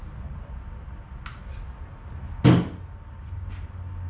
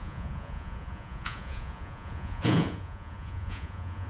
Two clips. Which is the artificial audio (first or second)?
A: second